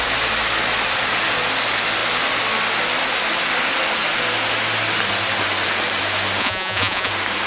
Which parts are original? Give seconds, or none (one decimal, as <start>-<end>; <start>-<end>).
0.0-6.4; 7.1-7.5